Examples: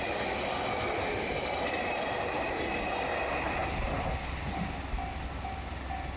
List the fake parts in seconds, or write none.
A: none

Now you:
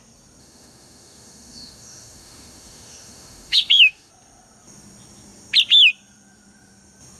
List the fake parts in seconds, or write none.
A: 0.4-4.1 (autoencoder, DAC-VAE)

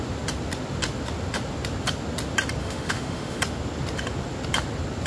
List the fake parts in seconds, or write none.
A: 2.6-3.4 (autoencoder, DAC-VAE)

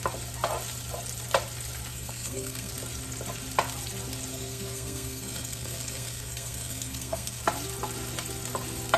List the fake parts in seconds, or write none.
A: 1.9-2.7 (codec, SNAC); 4.3-7.4

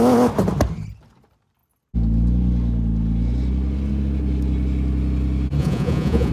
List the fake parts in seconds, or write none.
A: 5.6-6.3 (vocoder, Vocos)